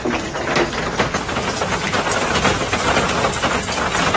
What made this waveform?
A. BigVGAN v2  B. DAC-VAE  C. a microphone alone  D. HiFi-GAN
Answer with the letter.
C